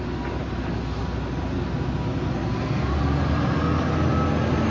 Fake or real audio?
real